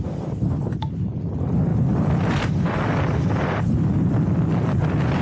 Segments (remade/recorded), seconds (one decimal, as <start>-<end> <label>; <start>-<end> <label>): 0.0-5.2 recorded